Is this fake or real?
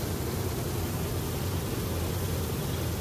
real